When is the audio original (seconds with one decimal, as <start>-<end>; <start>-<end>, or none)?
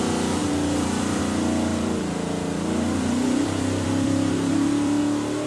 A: 0.0-0.4; 1.2-1.7; 5.0-5.5